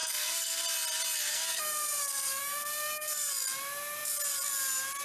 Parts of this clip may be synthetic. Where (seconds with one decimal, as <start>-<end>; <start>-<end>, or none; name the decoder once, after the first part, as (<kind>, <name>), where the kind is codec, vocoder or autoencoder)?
0.0-0.6 (codec, SNAC); 1.3-3.3